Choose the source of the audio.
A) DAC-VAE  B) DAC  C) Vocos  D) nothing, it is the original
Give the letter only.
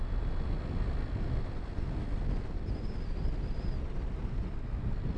D